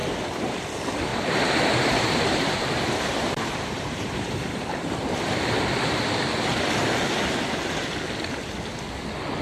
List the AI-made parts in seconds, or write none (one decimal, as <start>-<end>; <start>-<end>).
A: 0.0-0.6; 1.1-4.8